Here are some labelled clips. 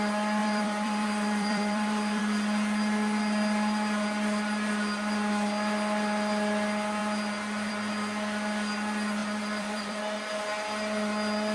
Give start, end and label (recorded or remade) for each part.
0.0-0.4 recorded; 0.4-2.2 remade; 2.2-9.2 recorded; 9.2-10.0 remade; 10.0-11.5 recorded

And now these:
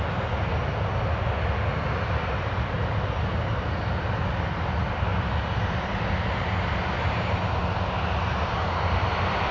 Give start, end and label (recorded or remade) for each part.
0.0-9.5 recorded

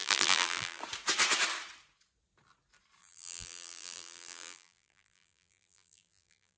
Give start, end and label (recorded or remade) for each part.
0.0-0.8 remade; 0.8-3.0 recorded; 3.0-6.6 remade

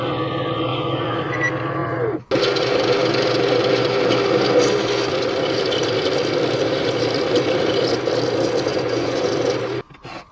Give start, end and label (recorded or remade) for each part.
0.0-0.7 recorded; 0.7-1.2 remade; 1.2-8.7 recorded; 8.7-9.3 remade; 9.3-10.3 recorded

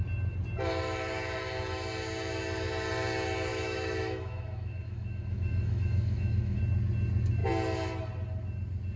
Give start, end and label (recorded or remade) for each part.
0.0-3.5 recorded; 3.5-6.6 remade; 6.6-9.0 recorded

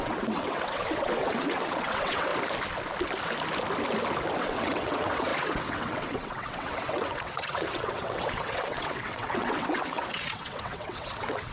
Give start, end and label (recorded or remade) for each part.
0.0-2.3 remade; 2.3-4.4 recorded; 4.4-11.5 remade

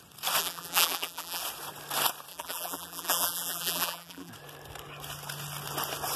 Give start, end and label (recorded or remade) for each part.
0.0-0.4 recorded; 0.4-1.4 remade; 1.4-2.3 recorded; 2.3-4.3 remade; 4.3-6.2 recorded

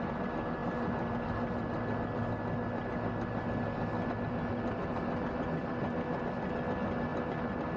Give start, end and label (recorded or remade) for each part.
0.0-7.8 recorded